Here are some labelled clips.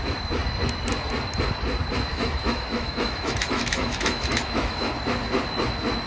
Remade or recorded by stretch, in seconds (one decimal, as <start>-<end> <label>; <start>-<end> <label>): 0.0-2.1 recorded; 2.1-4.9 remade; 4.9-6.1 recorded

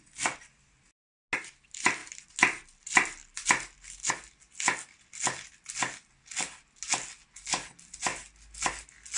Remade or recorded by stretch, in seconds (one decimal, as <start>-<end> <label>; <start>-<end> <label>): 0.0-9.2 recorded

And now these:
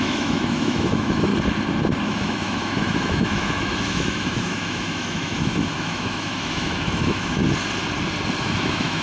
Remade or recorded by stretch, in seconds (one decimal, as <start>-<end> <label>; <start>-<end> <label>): 0.0-1.3 remade; 1.3-2.0 recorded; 2.0-7.4 remade; 7.4-8.4 recorded; 8.4-9.0 remade

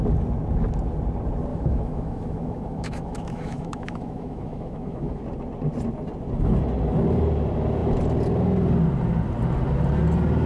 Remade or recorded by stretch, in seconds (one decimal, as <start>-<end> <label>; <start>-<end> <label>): 0.0-1.5 recorded; 1.5-5.2 remade; 5.2-10.5 recorded